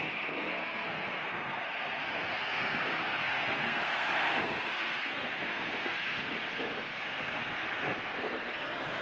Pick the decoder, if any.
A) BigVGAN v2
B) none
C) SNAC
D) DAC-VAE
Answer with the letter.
C